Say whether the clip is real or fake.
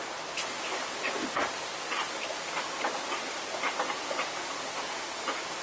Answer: real